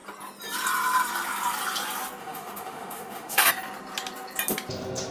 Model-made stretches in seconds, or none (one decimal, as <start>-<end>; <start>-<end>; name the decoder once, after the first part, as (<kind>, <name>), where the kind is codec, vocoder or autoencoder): 2.2-3.5 (autoencoder, DAC-VAE)